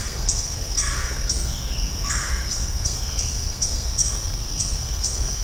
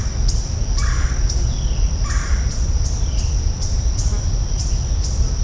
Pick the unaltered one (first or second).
second